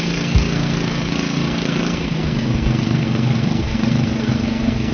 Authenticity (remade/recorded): remade